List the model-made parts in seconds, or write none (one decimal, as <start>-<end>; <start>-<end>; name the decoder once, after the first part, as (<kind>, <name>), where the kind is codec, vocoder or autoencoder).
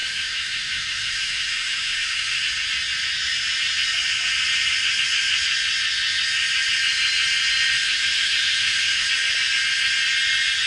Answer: 0.0-2.4 (autoencoder, DAC-VAE); 7.9-9.1